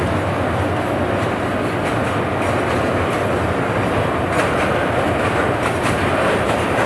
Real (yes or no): yes